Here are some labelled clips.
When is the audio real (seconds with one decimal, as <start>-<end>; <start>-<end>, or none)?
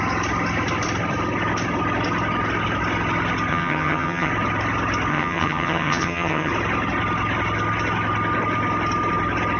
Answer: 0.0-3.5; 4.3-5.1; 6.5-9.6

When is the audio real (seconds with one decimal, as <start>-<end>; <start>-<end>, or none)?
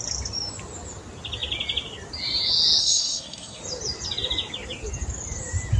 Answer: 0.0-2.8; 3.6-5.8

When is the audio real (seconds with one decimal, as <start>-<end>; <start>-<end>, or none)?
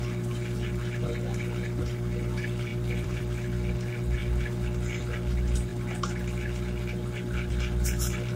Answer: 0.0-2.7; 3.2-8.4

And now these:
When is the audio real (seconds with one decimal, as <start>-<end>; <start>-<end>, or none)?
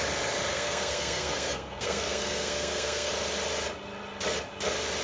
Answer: 0.0-0.5; 3.1-5.0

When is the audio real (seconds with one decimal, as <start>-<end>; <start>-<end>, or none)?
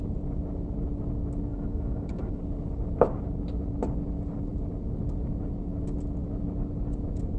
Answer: 0.0-1.5; 2.4-7.4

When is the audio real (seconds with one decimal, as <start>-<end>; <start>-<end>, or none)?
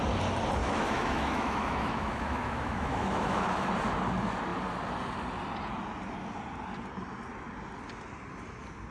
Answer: 0.0-0.6; 3.7-8.9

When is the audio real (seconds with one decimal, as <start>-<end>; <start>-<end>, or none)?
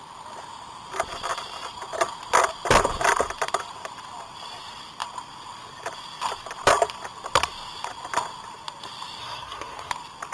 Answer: 0.0-9.2; 9.9-10.3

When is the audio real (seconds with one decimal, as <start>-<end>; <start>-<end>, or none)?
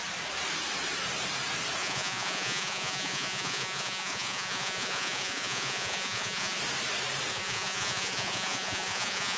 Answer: 0.0-1.8; 6.6-7.3